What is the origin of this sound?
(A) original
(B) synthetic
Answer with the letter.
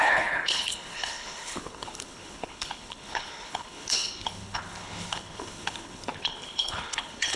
B